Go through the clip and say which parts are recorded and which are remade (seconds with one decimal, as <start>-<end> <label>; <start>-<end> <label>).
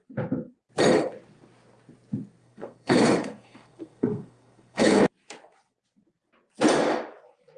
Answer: 0.0-2.4 recorded; 2.4-5.0 remade; 5.0-7.6 recorded